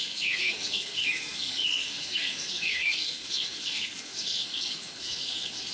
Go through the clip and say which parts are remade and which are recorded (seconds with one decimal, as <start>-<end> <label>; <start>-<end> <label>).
0.0-5.7 remade